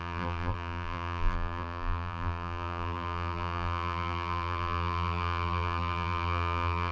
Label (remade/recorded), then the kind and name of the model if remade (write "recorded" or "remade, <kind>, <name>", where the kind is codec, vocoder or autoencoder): remade, vocoder, BigVGAN v2